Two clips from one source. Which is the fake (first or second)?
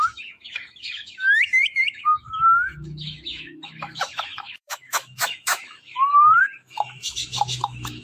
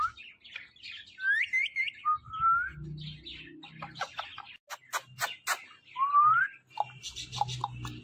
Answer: first